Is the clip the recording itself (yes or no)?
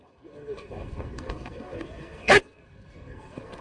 no